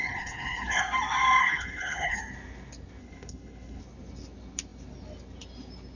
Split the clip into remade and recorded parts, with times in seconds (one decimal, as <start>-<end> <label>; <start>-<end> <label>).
0.0-0.8 remade; 0.8-1.4 recorded; 1.4-2.2 remade; 2.2-3.0 recorded; 3.0-3.8 remade; 3.8-6.0 recorded